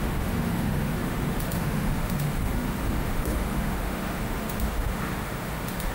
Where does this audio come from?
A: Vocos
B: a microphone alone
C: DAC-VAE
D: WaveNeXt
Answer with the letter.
C